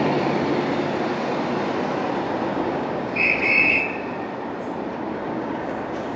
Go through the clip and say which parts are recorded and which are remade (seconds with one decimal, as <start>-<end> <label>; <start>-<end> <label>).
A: 0.0-2.5 recorded; 2.5-3.8 remade; 3.8-5.1 recorded; 5.1-6.2 remade